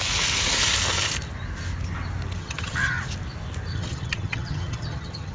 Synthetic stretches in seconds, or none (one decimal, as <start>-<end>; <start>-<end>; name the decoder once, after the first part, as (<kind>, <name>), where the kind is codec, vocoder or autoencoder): 2.4-3.0 (vocoder, HiFi-GAN); 3.7-5.3